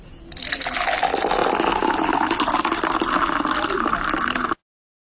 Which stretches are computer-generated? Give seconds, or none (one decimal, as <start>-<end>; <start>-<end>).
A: none